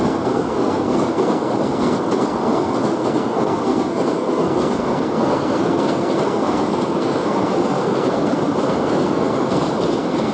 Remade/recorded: remade